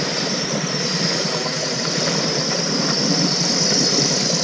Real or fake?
fake